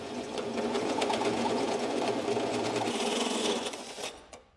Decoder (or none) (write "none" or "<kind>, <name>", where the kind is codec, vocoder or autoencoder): vocoder, Vocos